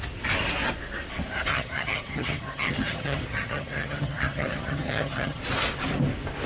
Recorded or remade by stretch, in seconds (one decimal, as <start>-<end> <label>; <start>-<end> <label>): 0.0-1.5 recorded; 1.5-5.4 remade; 5.4-6.5 recorded